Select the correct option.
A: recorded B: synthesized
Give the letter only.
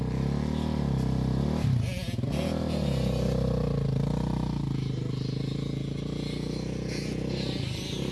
A